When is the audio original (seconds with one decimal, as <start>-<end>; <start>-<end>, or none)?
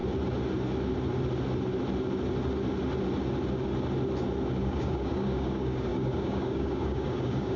0.0-4.6